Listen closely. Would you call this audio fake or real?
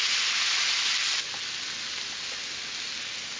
real